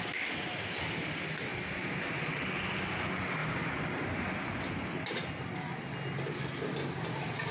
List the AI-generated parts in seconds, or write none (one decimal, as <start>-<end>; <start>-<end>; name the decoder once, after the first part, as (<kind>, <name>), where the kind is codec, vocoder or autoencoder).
none